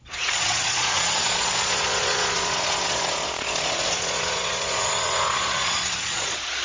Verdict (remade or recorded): remade